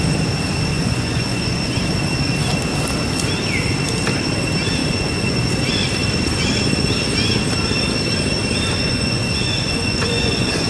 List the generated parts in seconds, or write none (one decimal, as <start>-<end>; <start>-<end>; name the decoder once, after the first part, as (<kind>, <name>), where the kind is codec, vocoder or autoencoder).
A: 0.7-1.8 (vocoder, Vocos); 4.8-5.4; 8.8-10.7